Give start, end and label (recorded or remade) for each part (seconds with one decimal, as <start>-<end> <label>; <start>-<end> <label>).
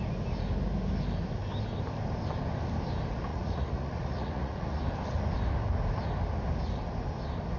0.0-3.3 recorded; 3.3-4.8 remade; 4.8-7.6 recorded